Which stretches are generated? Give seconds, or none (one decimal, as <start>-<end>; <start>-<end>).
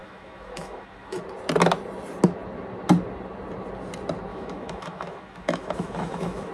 0.0-1.2; 4.3-6.5